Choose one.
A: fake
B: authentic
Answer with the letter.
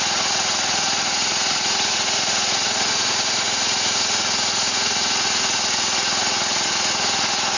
A